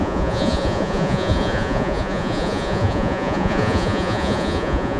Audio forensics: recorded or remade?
remade